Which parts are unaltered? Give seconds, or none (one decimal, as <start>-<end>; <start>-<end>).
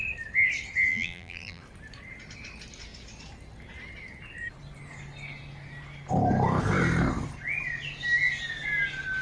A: 0.0-0.9; 1.6-9.2